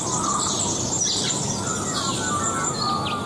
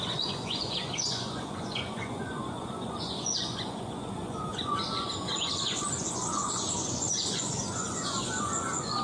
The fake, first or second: second